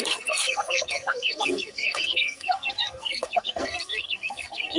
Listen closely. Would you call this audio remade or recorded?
remade